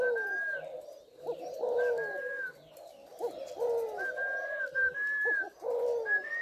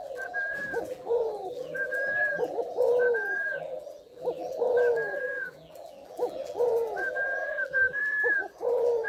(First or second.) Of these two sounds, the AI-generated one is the second